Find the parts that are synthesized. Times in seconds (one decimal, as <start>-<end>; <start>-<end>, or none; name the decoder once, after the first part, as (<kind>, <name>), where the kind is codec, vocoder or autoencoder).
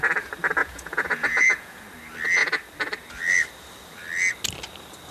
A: 0.6-1.8 (vocoder, Vocos)